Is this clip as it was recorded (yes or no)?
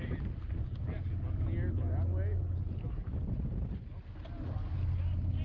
yes